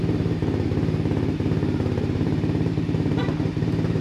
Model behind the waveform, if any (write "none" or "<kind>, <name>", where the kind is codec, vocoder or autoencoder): vocoder, BigVGAN v2